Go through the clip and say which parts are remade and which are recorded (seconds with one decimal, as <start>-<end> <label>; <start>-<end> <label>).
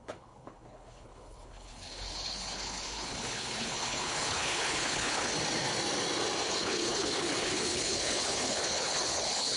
0.0-5.3 remade; 5.3-6.5 recorded; 6.5-9.6 remade